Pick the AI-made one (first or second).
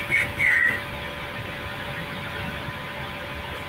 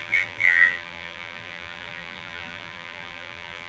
second